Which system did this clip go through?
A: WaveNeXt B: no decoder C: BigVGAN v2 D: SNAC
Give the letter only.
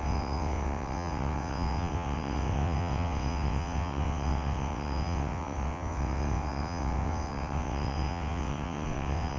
A